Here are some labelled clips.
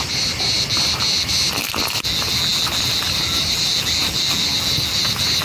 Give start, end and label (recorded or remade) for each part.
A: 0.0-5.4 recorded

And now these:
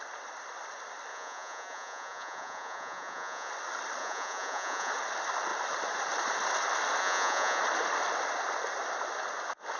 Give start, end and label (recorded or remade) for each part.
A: 0.0-1.1 recorded; 1.1-3.5 remade; 3.5-4.0 recorded; 4.0-4.9 remade; 4.9-7.0 recorded; 7.0-7.6 remade; 7.6-9.8 recorded

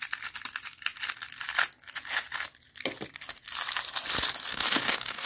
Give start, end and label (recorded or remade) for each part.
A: 0.0-4.5 recorded; 4.5-5.3 remade

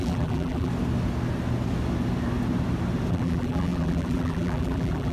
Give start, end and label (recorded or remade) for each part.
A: 0.0-0.7 remade; 0.7-3.1 recorded; 3.1-5.1 remade

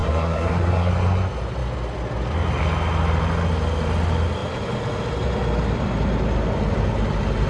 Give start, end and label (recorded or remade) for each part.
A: 0.0-0.9 remade; 0.9-7.5 recorded

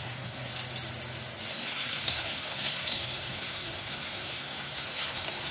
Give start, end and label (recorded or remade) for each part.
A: 0.0-0.5 remade; 0.5-1.5 recorded; 1.5-5.5 remade